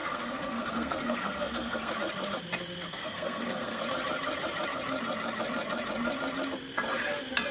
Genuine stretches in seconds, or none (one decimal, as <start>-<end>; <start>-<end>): 1.9-3.0; 3.8-7.5